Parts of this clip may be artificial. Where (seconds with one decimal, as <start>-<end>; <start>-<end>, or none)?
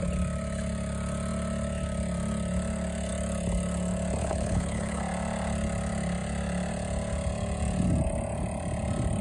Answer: 4.2-5.0